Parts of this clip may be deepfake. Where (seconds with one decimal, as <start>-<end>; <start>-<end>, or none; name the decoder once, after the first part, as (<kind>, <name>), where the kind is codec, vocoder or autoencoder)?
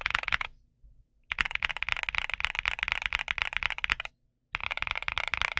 4.6-5.6 (vocoder, BigVGAN v2)